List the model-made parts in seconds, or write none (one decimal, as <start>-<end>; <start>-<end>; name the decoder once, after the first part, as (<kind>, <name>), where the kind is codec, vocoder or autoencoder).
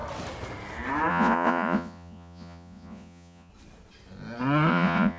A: 1.1-3.5 (vocoder, Vocos); 4.7-5.2